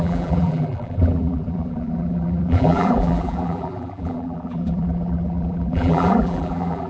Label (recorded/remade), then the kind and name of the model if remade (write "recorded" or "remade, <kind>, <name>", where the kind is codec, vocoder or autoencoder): remade, vocoder, BigVGAN v2